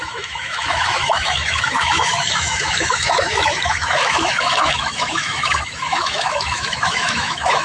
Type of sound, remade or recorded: remade